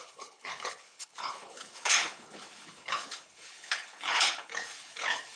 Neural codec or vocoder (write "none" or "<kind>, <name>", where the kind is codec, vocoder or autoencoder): codec, HILCodec